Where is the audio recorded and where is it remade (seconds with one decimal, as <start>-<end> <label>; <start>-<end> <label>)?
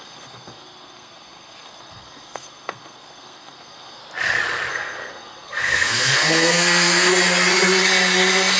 0.0-4.0 remade; 4.0-4.7 recorded; 4.7-7.1 remade; 7.1-8.6 recorded